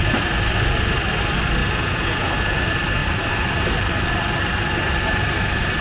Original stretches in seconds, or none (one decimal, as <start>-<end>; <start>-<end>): 0.0-1.6; 2.6-5.8